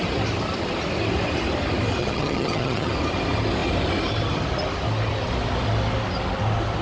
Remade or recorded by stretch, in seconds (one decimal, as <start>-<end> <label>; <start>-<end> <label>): 0.0-2.0 recorded; 2.0-2.9 remade; 2.9-6.8 recorded